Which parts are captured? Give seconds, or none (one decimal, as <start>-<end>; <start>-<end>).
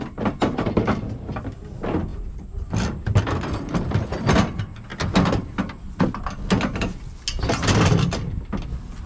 0.0-9.1